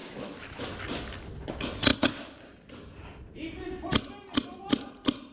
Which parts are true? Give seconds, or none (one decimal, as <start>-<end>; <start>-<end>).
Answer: 0.8-5.3